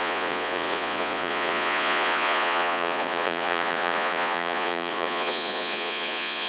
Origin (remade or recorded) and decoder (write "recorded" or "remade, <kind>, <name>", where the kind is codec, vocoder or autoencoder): remade, vocoder, Vocos